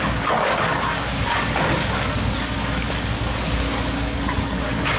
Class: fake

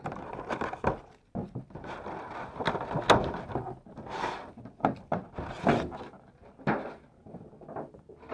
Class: real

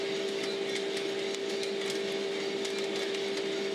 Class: real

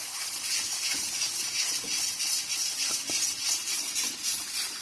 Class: real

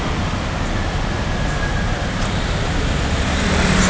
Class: real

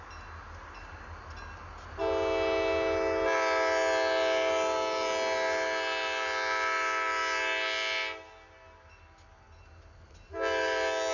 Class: real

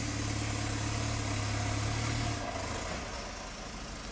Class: real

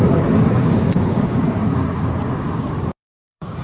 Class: fake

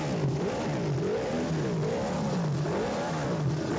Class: real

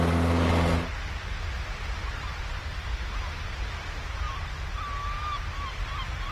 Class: real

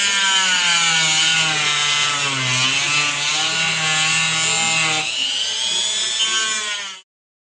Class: real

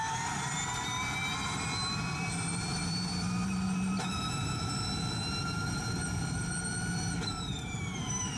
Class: fake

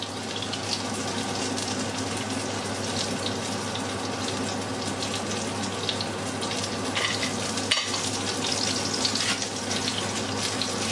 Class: real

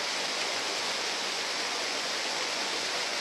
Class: fake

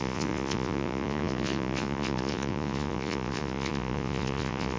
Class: fake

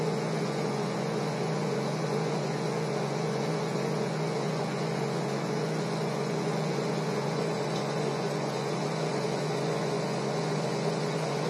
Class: fake